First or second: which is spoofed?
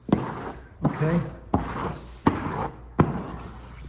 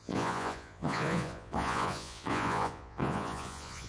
second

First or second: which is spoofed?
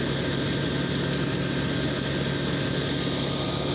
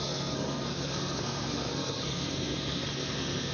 second